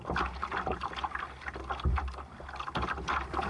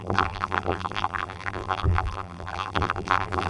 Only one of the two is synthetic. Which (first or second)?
second